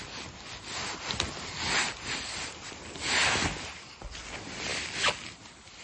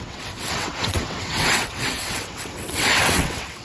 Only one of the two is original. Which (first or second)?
first